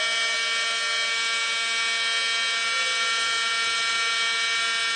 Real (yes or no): yes